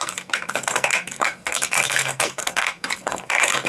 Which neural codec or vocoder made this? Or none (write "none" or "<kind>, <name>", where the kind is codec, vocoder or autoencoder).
codec, SNAC